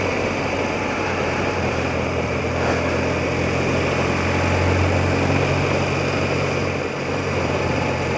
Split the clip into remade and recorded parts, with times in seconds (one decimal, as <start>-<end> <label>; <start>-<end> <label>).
0.0-2.5 remade; 2.5-7.1 recorded; 7.1-8.2 remade